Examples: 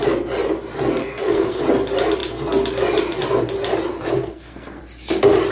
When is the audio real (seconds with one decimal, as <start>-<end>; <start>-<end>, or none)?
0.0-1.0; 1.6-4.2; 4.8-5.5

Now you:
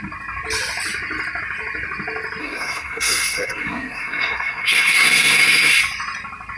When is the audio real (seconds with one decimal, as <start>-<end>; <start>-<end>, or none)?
0.0-2.4; 5.8-6.6

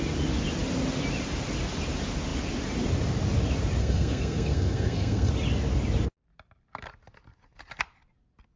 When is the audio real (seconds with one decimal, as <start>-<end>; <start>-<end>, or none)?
0.0-3.8; 5.3-8.6

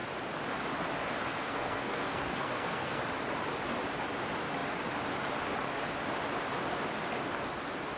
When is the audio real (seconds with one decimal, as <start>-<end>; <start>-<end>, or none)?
0.0-1.3; 3.0-8.0

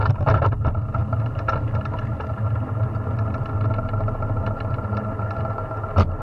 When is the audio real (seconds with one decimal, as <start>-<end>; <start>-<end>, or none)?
0.0-6.2

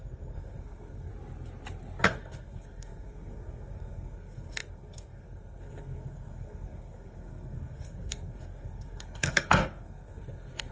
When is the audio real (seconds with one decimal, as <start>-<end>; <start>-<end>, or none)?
1.1-2.0